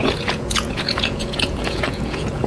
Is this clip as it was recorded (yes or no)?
no